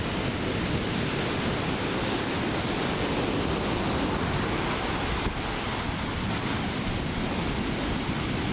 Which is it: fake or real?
real